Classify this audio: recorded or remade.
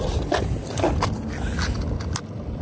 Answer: recorded